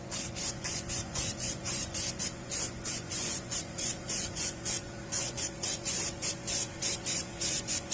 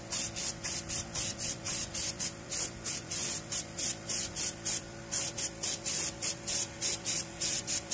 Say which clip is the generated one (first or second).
first